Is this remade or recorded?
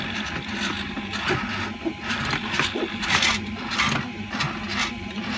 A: recorded